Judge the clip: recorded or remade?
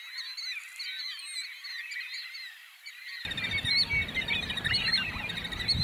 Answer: recorded